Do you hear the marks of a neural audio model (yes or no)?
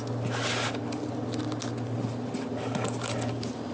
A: no